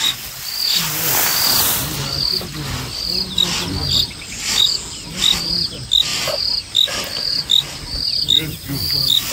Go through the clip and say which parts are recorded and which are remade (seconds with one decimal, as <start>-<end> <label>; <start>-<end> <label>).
0.0-9.3 recorded